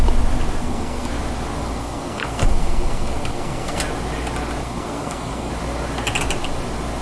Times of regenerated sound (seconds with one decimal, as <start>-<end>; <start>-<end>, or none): 0.6-1.1; 1.6-3.8; 4.6-5.5